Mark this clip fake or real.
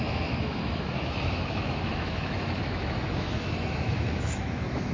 fake